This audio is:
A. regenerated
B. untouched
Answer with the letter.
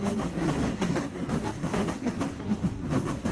A